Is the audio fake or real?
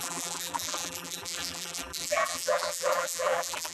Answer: fake